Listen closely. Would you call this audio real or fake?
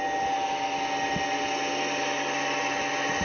real